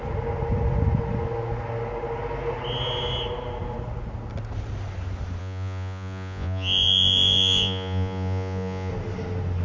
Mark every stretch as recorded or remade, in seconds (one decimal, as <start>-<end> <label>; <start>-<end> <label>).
0.0-5.4 recorded; 5.4-8.9 remade; 8.9-9.6 recorded